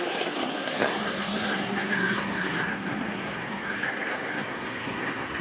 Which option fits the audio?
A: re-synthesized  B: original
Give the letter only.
A